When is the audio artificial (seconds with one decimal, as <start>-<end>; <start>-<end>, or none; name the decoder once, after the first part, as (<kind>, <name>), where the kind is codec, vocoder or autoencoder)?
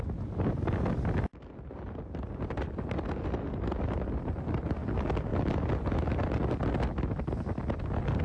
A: none